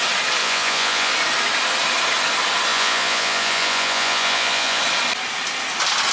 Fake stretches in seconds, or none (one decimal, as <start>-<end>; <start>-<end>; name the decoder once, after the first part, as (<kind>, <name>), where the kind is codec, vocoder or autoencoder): 0.4-1.1 (vocoder, Vocos); 2.7-4.8